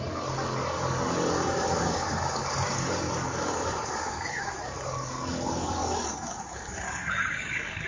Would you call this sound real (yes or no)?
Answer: no